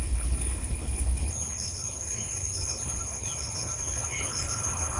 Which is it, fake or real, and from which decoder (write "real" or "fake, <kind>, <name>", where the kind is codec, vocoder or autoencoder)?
fake, codec, HILCodec